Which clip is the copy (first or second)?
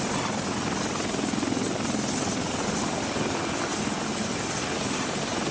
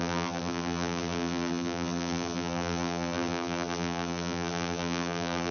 second